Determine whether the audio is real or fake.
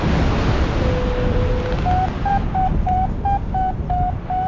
real